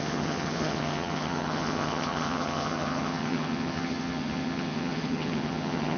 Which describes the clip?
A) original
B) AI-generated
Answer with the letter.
B